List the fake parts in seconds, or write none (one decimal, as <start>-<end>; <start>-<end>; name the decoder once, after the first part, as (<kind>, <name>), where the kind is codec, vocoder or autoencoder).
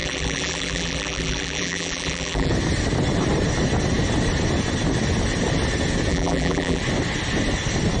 0.0-2.5 (vocoder, BigVGAN v2); 6.1-6.8